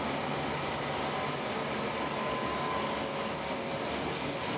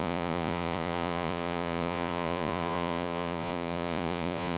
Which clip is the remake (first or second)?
second